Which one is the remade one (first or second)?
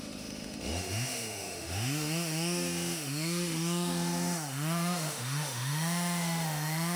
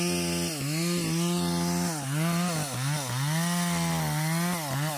first